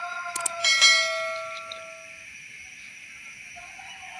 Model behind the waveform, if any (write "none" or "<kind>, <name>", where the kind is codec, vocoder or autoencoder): none